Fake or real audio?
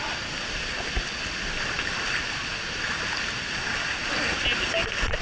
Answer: real